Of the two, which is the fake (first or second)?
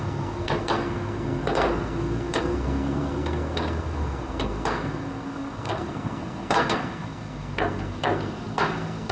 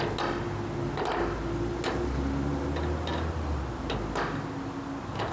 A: first